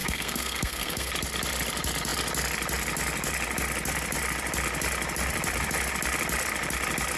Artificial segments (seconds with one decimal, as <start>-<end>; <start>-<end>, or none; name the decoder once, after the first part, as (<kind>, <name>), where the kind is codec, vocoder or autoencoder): 0.0-1.1 (codec, SNAC)